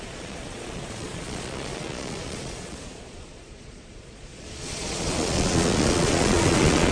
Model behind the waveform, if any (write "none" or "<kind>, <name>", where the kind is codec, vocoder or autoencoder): vocoder, Vocos